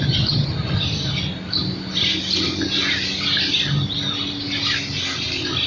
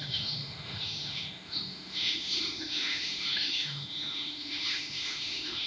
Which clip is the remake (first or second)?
second